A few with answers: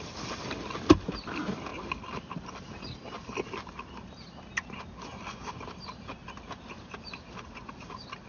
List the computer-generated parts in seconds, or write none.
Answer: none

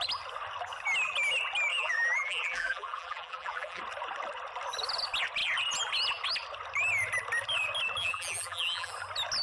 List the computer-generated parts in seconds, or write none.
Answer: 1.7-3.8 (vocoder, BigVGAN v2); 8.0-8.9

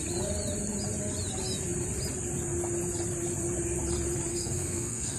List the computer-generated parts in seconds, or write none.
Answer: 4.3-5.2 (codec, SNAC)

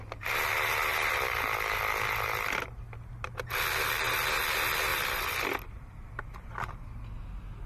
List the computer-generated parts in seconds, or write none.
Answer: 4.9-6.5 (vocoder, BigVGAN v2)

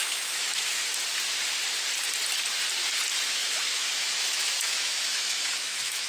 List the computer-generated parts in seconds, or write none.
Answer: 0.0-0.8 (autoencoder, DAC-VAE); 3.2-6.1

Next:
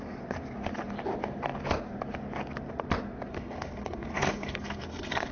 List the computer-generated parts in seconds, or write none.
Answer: 3.3-5.3 (codec, SNAC)